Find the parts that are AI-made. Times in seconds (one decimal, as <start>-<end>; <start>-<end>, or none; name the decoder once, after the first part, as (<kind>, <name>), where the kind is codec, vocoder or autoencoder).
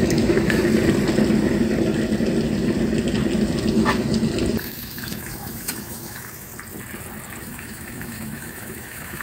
0.0-0.6 (autoencoder, DAC-VAE); 4.6-6.5; 7.4-9.2